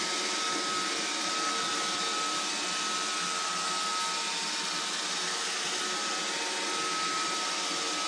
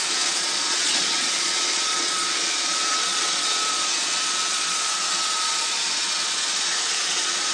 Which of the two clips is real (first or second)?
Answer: first